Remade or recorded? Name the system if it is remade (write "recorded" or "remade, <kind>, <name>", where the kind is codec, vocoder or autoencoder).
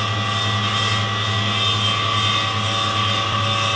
recorded